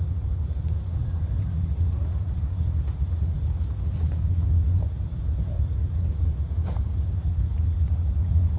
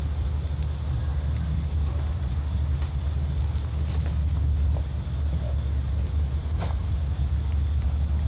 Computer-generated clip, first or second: first